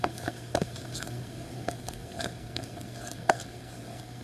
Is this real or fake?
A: fake